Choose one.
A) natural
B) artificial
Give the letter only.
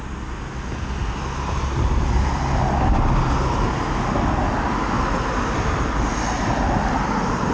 A